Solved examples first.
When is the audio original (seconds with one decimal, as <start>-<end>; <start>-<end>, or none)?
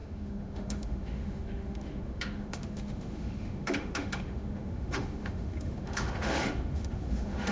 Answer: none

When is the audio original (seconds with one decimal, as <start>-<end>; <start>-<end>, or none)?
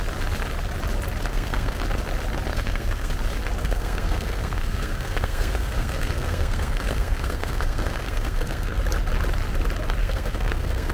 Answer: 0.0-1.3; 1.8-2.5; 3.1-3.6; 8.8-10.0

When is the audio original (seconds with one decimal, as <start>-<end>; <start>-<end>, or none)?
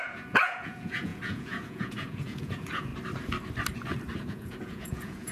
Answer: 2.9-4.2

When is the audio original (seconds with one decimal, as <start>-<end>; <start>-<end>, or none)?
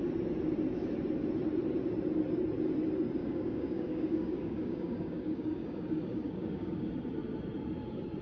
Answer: 0.0-3.2; 6.9-8.2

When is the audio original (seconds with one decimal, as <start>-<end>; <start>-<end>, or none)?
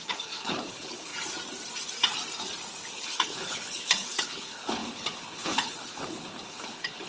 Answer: 1.1-2.9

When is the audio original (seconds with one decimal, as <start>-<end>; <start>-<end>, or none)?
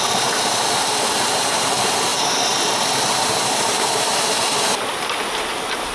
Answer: 0.0-5.9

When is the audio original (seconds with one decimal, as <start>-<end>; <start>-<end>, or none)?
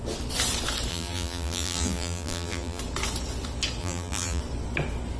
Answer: 0.0-0.9; 2.8-3.8; 4.4-5.2